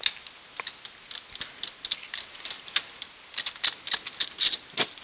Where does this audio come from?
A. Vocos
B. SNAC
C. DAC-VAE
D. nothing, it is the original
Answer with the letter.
D